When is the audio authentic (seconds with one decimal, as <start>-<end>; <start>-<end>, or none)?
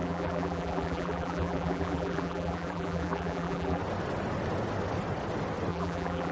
3.8-5.7